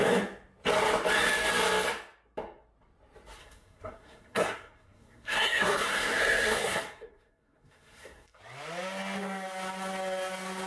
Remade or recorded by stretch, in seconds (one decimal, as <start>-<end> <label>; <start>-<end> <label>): 0.0-3.4 recorded; 3.4-8.4 remade; 8.4-10.7 recorded